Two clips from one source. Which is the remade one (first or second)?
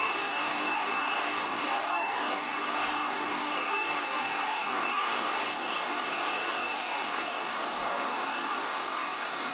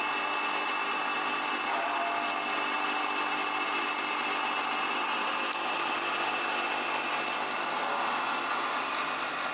first